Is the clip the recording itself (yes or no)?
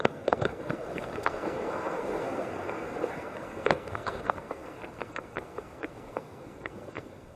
no